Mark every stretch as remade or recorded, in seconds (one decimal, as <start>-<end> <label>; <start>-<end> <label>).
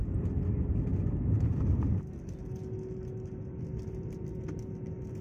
0.0-0.9 recorded; 0.9-1.6 remade; 1.6-5.2 recorded